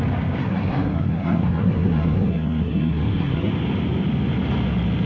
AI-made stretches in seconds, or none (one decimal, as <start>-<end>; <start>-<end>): 0.4-3.5